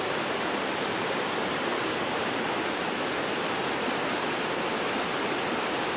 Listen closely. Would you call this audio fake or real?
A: real